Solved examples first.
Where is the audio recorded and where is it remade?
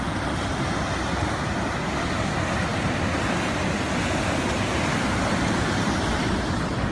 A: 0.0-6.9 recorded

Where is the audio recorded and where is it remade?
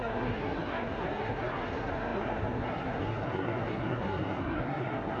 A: 0.0-5.2 remade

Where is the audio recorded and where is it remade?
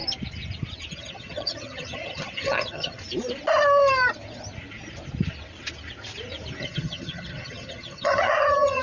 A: 0.0-0.9 recorded; 0.9-3.0 remade; 3.0-6.6 recorded; 6.6-8.8 remade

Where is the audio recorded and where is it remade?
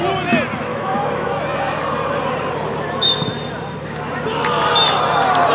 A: 0.0-0.7 recorded; 0.7-1.3 remade; 1.3-5.5 recorded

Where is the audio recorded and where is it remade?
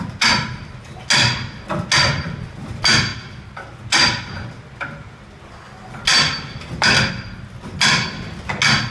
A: 0.0-8.9 recorded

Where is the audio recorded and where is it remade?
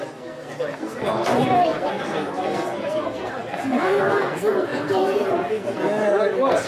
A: 0.0-6.7 remade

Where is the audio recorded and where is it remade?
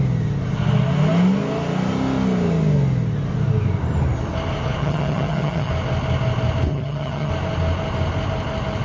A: 0.0-4.8 recorded; 4.8-5.7 remade; 5.7-6.7 recorded; 6.7-7.3 remade; 7.3-8.8 recorded